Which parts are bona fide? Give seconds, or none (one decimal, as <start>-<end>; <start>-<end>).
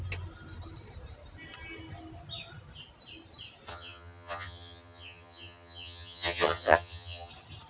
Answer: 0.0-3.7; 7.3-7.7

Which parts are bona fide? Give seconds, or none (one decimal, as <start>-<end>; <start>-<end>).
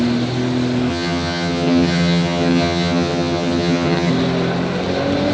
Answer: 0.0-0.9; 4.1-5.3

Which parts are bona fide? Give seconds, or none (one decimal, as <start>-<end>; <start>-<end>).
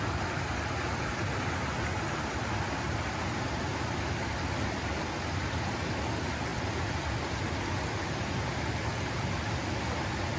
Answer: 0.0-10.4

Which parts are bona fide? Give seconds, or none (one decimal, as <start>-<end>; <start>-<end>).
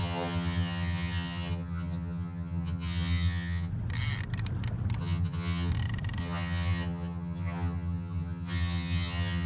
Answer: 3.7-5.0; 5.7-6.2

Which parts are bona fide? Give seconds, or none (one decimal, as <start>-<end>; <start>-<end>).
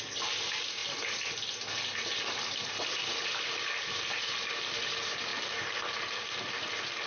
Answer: 0.0-7.1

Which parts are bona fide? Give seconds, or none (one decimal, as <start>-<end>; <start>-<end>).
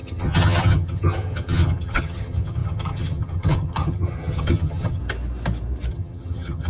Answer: 5.0-5.9